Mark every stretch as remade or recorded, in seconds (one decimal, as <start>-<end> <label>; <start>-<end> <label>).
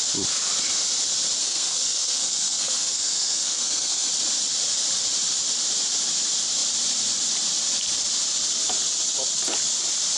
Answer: 0.0-1.4 recorded; 1.4-4.1 remade; 4.1-10.2 recorded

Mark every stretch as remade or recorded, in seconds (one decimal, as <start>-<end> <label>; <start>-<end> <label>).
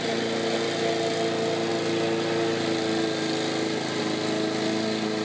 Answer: 0.0-5.2 recorded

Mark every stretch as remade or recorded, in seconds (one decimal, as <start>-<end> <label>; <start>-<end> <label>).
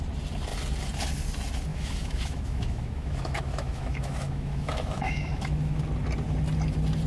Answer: 0.0-1.7 recorded; 1.7-5.8 remade; 5.8-7.1 recorded